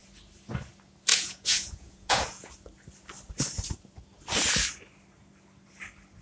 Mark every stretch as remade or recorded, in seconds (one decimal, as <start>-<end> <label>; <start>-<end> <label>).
0.0-1.1 recorded; 1.1-2.5 remade; 2.5-6.2 recorded